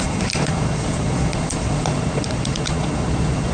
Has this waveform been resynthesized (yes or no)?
yes